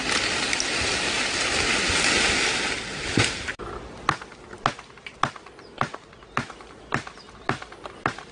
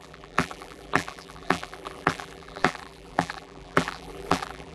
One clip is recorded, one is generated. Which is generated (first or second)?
second